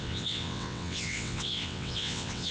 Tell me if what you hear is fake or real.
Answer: fake